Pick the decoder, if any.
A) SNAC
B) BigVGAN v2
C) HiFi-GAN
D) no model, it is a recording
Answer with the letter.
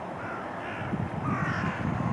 D